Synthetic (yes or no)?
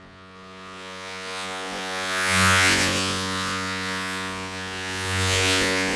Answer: yes